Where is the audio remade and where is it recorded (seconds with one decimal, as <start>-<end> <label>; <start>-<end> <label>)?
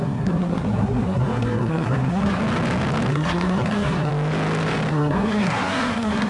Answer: 0.0-2.4 remade; 2.4-3.1 recorded; 3.1-4.1 remade; 4.1-4.9 recorded; 4.9-6.3 remade